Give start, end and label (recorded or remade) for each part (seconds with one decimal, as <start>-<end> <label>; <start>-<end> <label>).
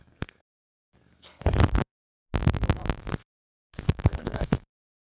0.0-2.2 remade; 2.2-3.0 recorded; 3.0-5.1 remade